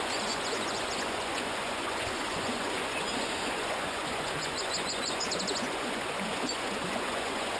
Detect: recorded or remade remade